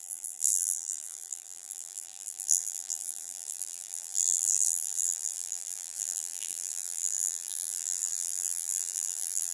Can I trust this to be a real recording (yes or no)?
no